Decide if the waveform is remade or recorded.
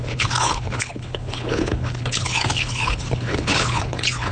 remade